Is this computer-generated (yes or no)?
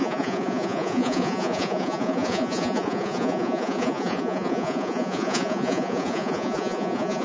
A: yes